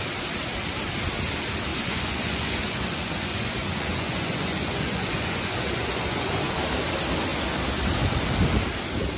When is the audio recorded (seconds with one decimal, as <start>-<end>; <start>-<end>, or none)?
0.0-1.7; 6.5-9.2